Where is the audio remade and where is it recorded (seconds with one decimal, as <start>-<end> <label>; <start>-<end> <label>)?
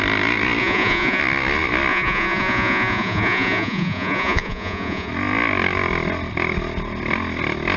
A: 0.0-0.6 recorded; 0.6-1.2 remade; 1.2-1.9 recorded; 1.9-5.1 remade; 5.1-7.8 recorded